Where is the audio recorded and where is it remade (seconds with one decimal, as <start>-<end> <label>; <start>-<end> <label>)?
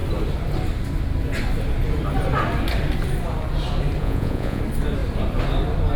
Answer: 0.0-4.0 recorded; 4.0-4.6 remade; 4.6-6.0 recorded